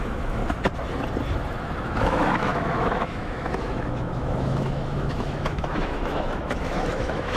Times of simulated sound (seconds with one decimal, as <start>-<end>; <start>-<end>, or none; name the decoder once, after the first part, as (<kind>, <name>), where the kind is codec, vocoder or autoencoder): 0.0-0.4 (autoencoder, DAC-VAE); 1.8-7.4